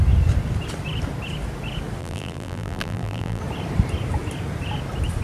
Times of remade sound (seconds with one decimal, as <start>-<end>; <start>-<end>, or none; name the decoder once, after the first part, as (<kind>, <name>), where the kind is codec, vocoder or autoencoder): 2.0-3.4 (vocoder, BigVGAN v2)